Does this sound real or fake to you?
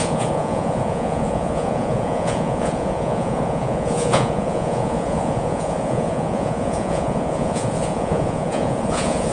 fake